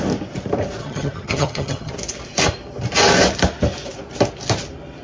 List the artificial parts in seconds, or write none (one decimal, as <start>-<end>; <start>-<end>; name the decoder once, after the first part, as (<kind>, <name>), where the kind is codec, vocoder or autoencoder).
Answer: 0.8-1.9 (vocoder, HiFi-GAN)